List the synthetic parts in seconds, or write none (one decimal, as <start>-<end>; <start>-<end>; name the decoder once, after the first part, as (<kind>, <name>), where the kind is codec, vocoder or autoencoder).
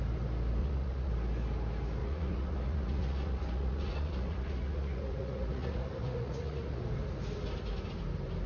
0.6-1.1 (vocoder, Vocos); 2.0-6.8